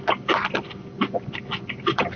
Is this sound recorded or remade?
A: recorded